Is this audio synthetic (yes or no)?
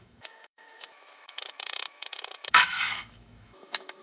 yes